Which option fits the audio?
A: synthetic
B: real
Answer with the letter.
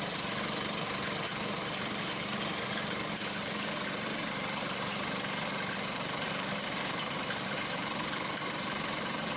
A